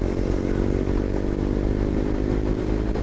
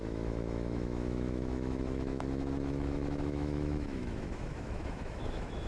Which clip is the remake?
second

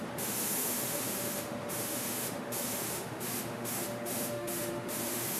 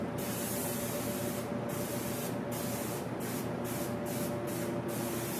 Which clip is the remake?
first